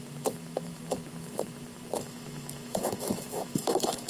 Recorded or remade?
remade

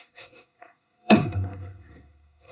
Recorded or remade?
remade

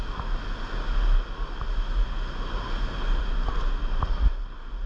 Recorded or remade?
recorded